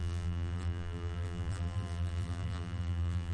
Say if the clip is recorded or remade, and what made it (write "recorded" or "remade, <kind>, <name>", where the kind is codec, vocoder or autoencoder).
remade, vocoder, BigVGAN v2